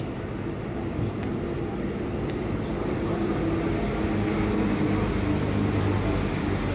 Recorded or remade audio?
recorded